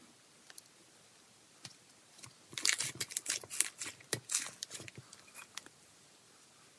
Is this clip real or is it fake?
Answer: real